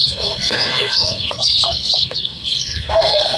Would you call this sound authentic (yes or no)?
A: no